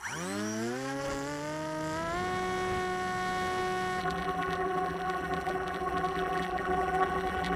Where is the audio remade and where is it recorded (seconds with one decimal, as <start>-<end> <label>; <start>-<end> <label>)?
0.0-4.0 recorded; 4.0-7.6 remade